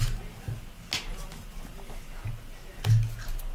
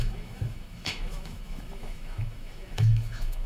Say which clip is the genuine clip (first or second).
first